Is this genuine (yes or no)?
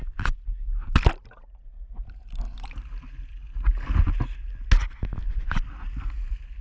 yes